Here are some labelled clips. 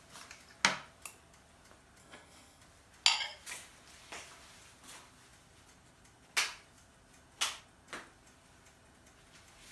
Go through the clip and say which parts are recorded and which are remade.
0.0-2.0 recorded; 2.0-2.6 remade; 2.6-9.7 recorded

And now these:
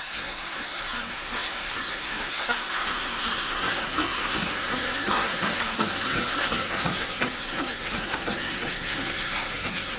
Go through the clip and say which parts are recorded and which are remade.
0.0-10.0 remade

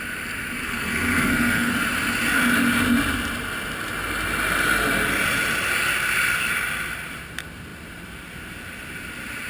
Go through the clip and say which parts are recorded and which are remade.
0.0-0.6 recorded; 0.6-1.7 remade; 1.7-9.5 recorded

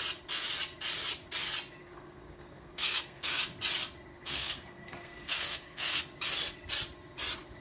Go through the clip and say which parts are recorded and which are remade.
0.0-1.8 recorded; 1.8-3.4 remade; 3.4-4.1 recorded; 4.1-6.0 remade; 6.0-7.6 recorded